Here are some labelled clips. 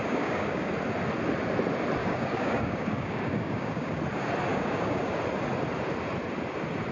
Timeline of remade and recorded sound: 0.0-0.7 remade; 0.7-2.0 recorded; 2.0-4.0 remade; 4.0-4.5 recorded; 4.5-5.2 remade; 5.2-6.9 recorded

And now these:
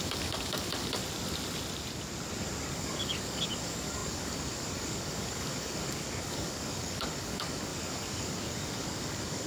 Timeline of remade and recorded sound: 0.0-1.0 remade; 1.0-2.7 recorded; 2.7-9.5 remade

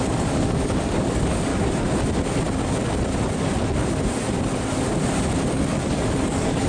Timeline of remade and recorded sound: 0.0-1.5 remade; 1.5-5.5 recorded; 5.5-6.7 remade

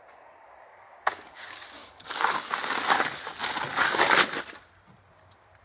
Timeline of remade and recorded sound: 0.0-0.7 recorded; 0.7-2.8 remade; 2.8-5.6 recorded

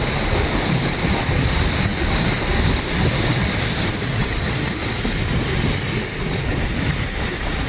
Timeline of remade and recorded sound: 0.0-7.7 recorded